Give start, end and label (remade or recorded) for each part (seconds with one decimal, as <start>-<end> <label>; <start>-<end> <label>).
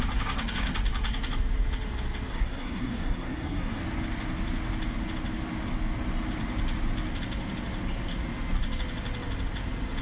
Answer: 0.0-2.3 recorded; 2.3-3.8 remade; 3.8-10.0 recorded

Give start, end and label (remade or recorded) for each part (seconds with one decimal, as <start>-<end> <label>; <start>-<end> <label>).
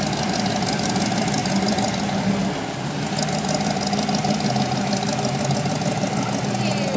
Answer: 0.0-7.0 recorded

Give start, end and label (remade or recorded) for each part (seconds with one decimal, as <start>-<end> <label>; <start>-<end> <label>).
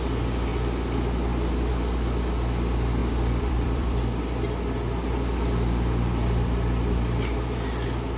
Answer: 0.0-3.0 recorded; 3.0-4.2 remade; 4.2-8.2 recorded